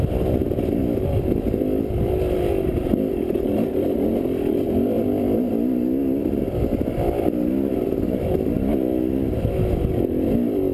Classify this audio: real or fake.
real